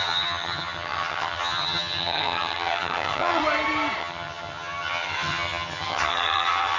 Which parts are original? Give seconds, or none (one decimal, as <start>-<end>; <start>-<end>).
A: 3.4-4.0